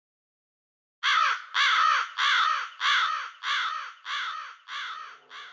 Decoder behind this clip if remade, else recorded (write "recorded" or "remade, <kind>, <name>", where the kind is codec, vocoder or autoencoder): recorded